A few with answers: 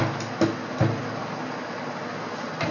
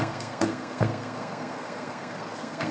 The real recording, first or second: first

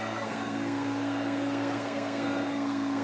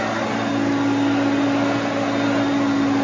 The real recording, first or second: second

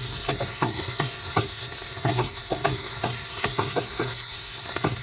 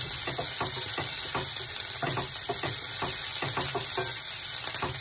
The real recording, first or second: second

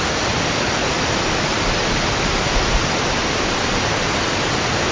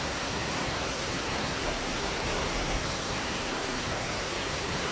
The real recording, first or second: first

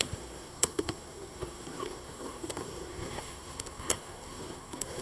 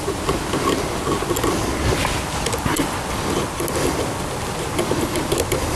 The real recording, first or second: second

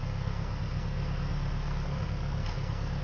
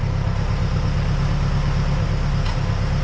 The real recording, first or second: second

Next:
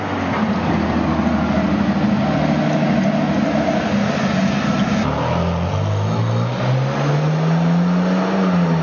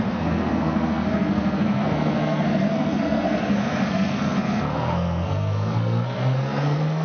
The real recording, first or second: first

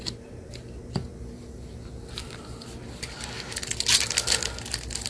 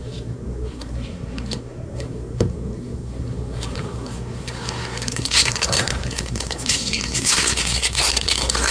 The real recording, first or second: first